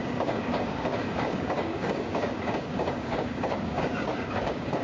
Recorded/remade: remade